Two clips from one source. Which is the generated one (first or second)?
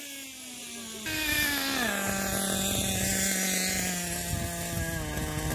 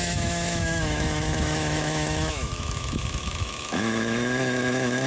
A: second